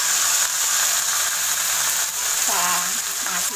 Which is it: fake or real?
real